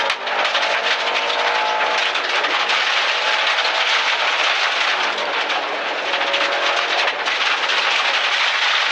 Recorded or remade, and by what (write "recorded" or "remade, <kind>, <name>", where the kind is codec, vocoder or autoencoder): recorded